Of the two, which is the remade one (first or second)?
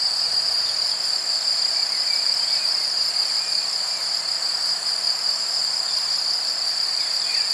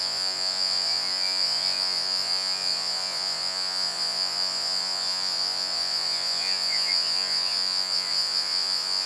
second